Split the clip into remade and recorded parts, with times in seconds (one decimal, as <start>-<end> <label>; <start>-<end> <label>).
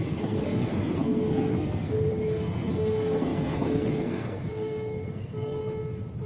0.0-5.6 remade; 5.6-6.3 recorded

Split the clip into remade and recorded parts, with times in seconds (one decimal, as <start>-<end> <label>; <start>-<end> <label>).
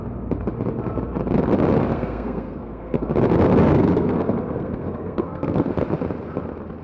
0.0-1.9 recorded; 1.9-3.1 remade; 3.1-3.6 recorded; 3.6-5.7 remade; 5.7-6.8 recorded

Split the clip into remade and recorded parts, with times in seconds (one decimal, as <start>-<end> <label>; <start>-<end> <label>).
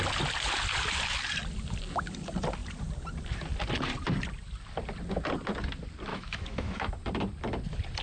0.0-6.1 recorded; 6.1-6.9 remade; 6.9-8.0 recorded